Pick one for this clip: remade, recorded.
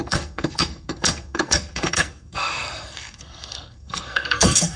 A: remade